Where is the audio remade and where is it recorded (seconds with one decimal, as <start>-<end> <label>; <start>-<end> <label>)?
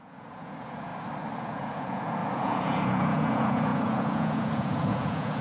0.0-0.9 remade; 0.9-1.4 recorded; 1.4-5.4 remade